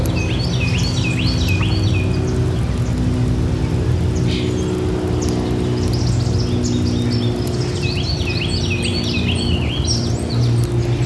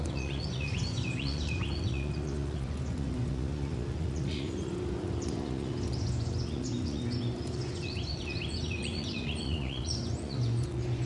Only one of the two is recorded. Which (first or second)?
first